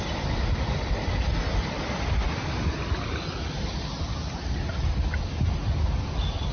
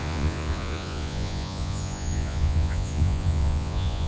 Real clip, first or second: first